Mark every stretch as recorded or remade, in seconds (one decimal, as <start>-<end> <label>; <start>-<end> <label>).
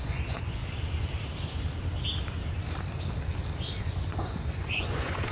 0.0-0.6 remade; 0.6-3.8 recorded; 3.8-5.3 remade